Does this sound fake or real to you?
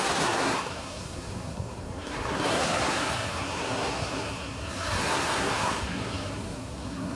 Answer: fake